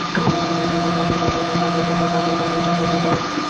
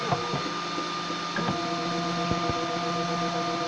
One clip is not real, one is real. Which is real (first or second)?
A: second